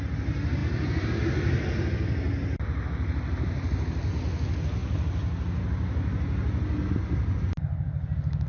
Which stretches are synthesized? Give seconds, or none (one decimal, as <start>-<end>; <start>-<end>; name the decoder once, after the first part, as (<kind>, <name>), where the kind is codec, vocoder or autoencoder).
none